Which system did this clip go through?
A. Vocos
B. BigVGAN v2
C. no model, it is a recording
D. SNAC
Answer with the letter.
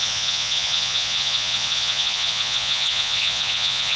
A